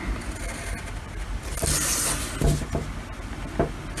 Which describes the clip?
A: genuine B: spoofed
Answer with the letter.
A